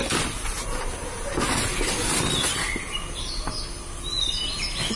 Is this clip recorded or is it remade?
recorded